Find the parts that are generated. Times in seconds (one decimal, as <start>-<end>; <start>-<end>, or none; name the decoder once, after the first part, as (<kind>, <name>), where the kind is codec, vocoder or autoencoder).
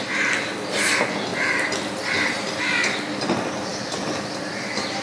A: 1.3-2.6 (vocoder, BigVGAN v2); 3.7-4.5